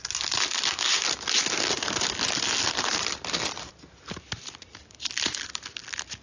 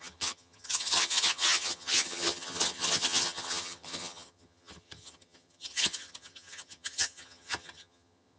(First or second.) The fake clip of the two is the second